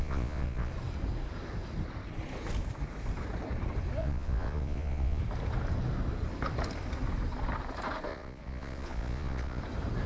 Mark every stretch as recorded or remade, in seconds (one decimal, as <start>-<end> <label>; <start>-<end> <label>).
0.0-0.7 remade; 0.7-4.0 recorded; 4.0-5.2 remade; 5.2-8.1 recorded; 8.1-9.6 remade; 9.6-10.1 recorded